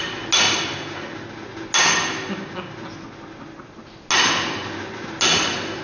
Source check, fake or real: real